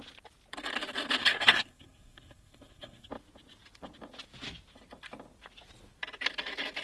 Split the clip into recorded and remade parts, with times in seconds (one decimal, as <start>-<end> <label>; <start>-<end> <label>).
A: 0.0-1.2 recorded; 1.2-3.1 remade; 3.1-6.8 recorded